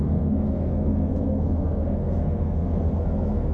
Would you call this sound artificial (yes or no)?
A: yes